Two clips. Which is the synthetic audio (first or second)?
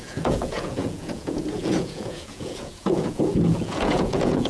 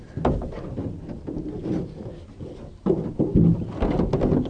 first